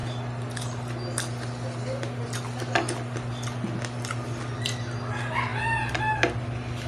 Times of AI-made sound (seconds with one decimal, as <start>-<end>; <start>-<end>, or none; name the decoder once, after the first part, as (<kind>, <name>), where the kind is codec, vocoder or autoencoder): none